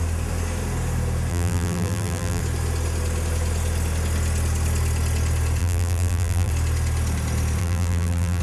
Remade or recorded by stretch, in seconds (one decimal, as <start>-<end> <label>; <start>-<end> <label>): 0.0-1.3 recorded; 1.3-2.4 remade; 2.4-5.6 recorded; 5.6-6.5 remade; 6.5-7.6 recorded; 7.6-8.4 remade